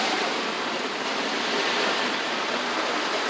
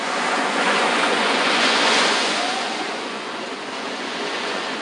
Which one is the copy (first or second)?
second